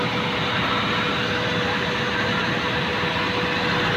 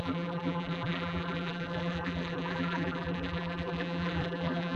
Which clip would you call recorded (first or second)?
first